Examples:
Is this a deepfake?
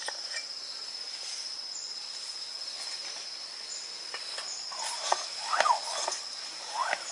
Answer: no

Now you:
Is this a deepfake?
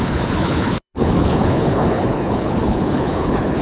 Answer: yes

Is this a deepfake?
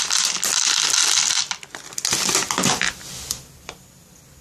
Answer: no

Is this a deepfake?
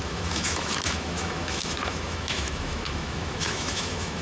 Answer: yes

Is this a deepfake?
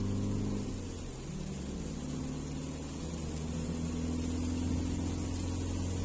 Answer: no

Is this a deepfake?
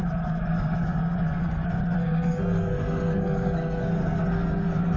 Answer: yes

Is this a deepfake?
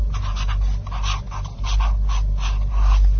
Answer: no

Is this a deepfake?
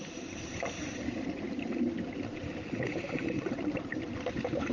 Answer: no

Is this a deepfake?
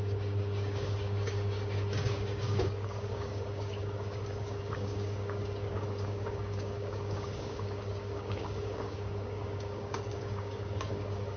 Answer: yes